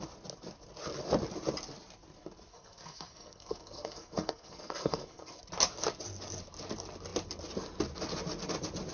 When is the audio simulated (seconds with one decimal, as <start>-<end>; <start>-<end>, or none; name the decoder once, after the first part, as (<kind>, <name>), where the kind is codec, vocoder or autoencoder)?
2.5-5.4 (codec, SNAC)